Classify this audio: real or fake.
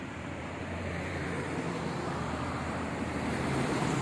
fake